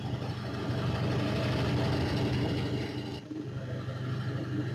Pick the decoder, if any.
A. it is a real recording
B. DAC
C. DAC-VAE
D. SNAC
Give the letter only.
A